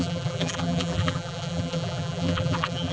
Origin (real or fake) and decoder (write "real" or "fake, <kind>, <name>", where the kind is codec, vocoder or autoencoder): fake, vocoder, BigVGAN v2